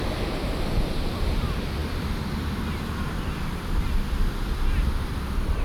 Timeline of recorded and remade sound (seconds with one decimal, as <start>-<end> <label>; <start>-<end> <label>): 0.0-5.6 remade